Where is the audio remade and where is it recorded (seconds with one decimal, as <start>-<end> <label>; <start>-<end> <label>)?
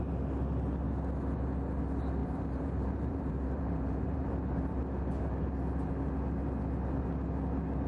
0.0-2.2 recorded; 2.2-4.8 remade; 4.8-7.9 recorded